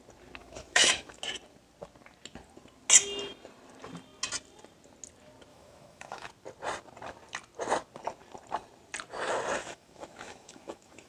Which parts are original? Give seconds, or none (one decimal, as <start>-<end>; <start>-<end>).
0.0-0.4; 1.2-5.5; 6.3-9.6